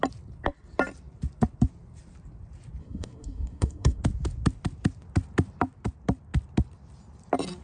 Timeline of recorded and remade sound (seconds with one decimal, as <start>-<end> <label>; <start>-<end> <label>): 0.0-2.8 recorded; 2.8-4.0 remade; 4.0-7.6 recorded